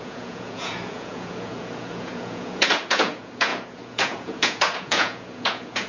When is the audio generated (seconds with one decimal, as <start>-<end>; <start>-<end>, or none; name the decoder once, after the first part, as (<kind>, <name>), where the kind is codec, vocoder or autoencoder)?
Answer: 0.0-5.9 (vocoder, Vocos)